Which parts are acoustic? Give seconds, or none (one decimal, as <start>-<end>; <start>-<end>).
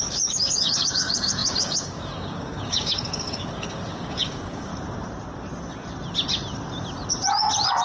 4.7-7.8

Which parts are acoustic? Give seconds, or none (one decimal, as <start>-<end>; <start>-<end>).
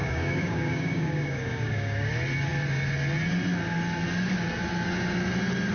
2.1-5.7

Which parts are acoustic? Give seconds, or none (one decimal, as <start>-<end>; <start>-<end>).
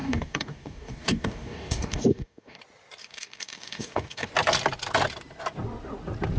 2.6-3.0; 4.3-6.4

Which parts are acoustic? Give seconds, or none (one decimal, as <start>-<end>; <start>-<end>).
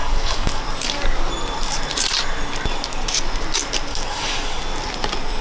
0.6-3.9; 4.6-5.4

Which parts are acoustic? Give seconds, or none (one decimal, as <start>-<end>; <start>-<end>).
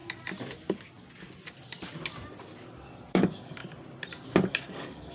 0.0-3.1; 3.6-4.5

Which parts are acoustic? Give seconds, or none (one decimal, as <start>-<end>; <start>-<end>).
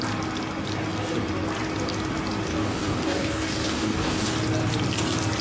0.0-2.5; 4.3-5.4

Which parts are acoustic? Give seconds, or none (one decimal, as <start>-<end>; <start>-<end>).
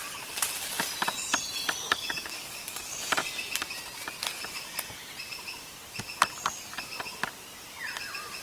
0.0-1.8; 3.0-8.4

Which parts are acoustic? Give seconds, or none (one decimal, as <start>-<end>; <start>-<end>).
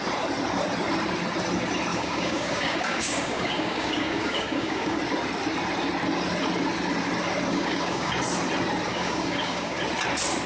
0.0-1.9; 5.0-7.5; 8.1-8.9; 9.8-10.5